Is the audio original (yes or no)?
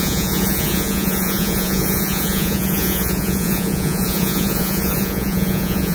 no